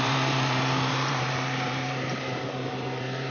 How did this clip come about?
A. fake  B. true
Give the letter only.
A